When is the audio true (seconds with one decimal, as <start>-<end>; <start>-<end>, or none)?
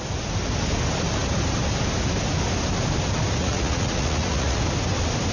0.0-3.4; 4.6-5.3